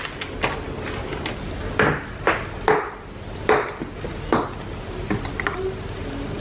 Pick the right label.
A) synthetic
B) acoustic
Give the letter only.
B